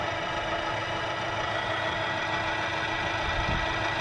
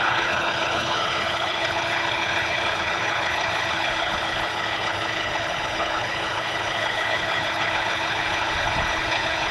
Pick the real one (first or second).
first